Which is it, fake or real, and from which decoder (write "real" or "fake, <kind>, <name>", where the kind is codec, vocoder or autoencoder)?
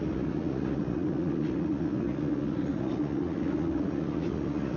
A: fake, vocoder, Vocos